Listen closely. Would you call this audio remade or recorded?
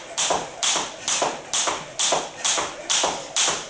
recorded